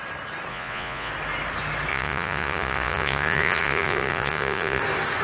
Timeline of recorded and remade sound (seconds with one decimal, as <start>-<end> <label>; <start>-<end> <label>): 0.0-0.5 recorded; 0.5-1.1 remade; 1.1-1.9 recorded; 1.9-4.8 remade; 4.8-5.2 recorded